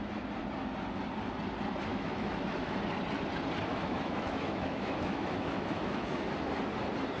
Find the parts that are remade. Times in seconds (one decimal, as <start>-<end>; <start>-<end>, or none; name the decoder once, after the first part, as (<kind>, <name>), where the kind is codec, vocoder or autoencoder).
1.9-2.8 (autoencoder, DAC-VAE); 3.7-6.3